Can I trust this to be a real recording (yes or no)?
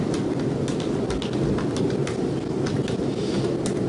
yes